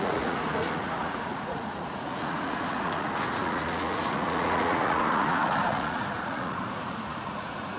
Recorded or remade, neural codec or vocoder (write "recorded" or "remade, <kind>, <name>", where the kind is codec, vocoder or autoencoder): remade, vocoder, Vocos